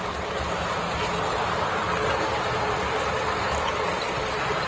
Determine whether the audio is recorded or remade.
recorded